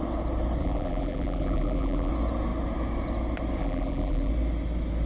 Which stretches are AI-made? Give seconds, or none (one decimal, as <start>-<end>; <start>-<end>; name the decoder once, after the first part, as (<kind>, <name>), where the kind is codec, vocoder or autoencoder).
0.6-2.1 (vocoder, BigVGAN v2); 3.6-4.3

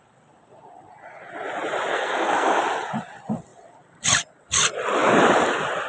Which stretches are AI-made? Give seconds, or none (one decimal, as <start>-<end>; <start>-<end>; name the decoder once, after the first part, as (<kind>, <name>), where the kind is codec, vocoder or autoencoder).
1.9-2.6 (codec, SNAC)

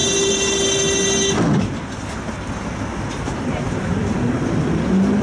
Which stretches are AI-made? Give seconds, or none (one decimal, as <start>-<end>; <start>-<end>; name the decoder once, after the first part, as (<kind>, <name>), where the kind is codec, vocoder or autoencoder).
none

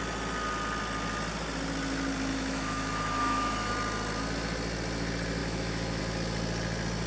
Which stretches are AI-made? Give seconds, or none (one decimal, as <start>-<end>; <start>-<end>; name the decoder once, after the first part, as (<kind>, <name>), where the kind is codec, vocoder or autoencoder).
2.3-3.7 (autoencoder, DAC-VAE); 5.4-6.0

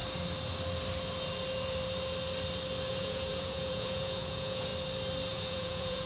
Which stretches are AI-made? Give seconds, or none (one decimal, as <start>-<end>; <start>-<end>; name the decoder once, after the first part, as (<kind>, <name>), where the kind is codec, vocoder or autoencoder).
2.9-4.7 (vocoder, Vocos); 5.3-6.1